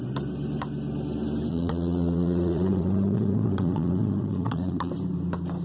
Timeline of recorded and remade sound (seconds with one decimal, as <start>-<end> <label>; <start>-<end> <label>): 0.0-1.5 recorded; 1.5-4.9 remade; 4.9-5.6 recorded